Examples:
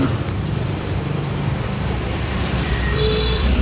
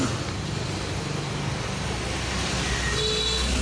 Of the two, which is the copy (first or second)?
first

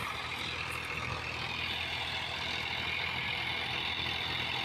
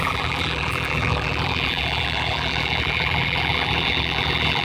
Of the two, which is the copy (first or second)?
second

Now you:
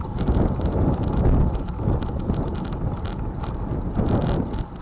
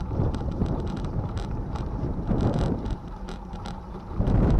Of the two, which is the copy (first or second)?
second